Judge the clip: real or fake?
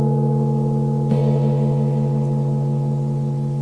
real